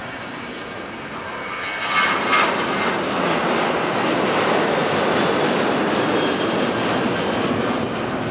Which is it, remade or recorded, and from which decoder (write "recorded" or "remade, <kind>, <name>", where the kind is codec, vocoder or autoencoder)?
recorded